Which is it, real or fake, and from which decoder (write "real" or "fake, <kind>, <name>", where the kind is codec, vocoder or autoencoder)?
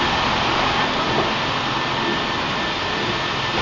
real